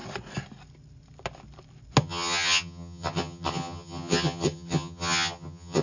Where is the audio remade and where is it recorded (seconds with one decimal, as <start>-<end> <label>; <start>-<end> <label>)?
0.0-2.0 recorded; 2.0-5.8 remade

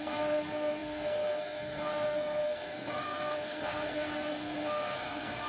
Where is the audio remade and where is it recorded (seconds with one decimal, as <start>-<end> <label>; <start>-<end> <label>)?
0.0-5.5 remade